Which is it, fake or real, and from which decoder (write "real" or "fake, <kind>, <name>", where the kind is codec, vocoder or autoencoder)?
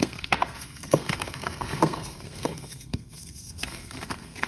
fake, codec, SNAC